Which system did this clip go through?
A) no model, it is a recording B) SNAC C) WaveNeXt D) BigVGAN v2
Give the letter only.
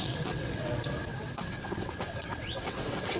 C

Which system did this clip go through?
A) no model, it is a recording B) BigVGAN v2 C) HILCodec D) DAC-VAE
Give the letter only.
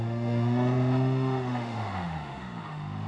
D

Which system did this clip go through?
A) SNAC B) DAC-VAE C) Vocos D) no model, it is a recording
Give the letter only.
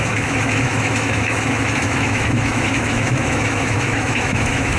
B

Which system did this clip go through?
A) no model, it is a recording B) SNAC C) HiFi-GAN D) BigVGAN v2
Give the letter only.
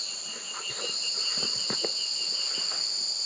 A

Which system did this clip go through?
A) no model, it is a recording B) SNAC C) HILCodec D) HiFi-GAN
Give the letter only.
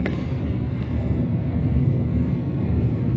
B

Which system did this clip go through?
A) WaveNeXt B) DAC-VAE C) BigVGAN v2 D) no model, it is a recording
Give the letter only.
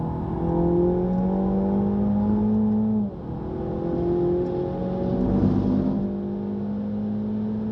D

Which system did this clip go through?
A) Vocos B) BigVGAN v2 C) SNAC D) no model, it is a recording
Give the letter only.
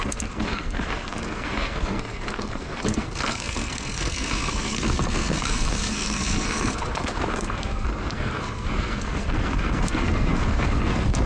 C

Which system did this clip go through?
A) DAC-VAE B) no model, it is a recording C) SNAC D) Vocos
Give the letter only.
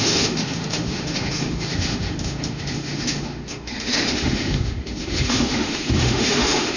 A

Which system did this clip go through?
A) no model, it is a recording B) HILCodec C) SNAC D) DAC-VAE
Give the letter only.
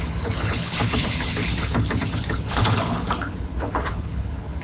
B